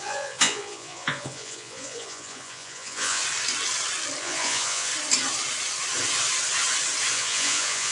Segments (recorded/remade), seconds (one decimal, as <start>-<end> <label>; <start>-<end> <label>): 0.0-3.2 remade; 3.2-4.2 recorded; 4.2-4.9 remade; 4.9-7.1 recorded; 7.1-7.9 remade